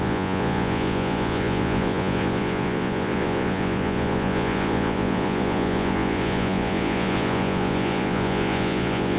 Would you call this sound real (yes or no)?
no